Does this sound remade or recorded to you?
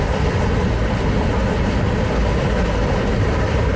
recorded